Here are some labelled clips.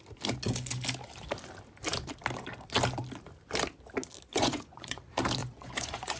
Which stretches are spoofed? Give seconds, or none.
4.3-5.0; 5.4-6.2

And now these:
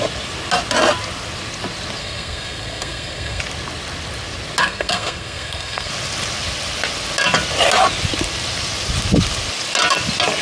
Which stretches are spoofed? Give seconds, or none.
2.0-3.4; 4.6-5.9

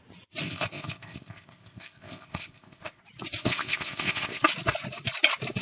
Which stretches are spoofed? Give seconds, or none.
0.4-3.0; 3.4-4.4

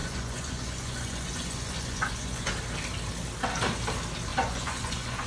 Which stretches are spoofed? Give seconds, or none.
0.0-2.5; 4.3-5.3

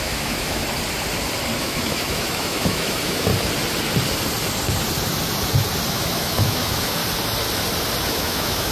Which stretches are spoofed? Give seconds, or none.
0.0-0.6; 1.6-3.3; 5.9-7.0; 8.1-8.7